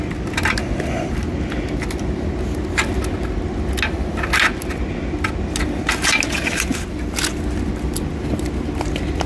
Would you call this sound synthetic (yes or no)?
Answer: no